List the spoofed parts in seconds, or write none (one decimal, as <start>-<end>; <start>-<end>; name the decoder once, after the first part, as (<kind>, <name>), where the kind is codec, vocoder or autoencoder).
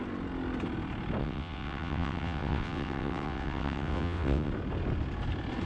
1.2-4.5 (vocoder, WaveNeXt)